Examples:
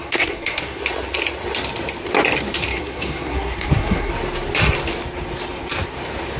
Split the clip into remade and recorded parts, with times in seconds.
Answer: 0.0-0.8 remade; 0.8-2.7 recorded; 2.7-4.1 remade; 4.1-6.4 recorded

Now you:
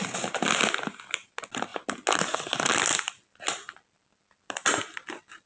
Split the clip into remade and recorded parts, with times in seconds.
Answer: 0.0-5.5 recorded

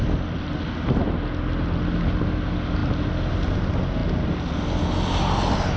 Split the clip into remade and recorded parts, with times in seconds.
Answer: 0.0-5.8 recorded

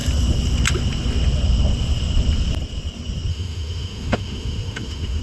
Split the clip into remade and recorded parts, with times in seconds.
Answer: 0.0-3.3 recorded; 3.3-5.2 remade

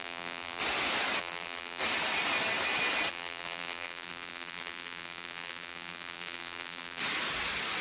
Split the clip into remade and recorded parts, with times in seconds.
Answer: 0.0-0.6 remade; 0.6-1.2 recorded; 1.2-1.8 remade; 1.8-3.1 recorded; 3.1-7.0 remade; 7.0-7.8 recorded

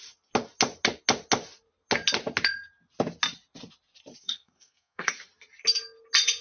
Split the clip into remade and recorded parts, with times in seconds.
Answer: 0.0-4.2 recorded; 4.2-5.1 remade; 5.1-6.4 recorded

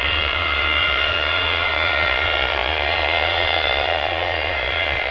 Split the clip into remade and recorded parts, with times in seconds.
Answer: 0.0-5.1 remade